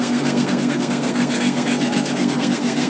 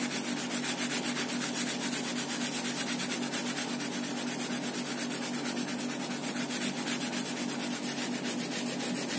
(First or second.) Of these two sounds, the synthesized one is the first